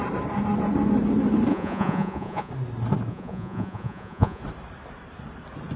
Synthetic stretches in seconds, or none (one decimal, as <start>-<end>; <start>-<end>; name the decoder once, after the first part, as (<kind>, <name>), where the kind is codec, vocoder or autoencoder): 1.5-2.5 (vocoder, Vocos); 3.1-4.4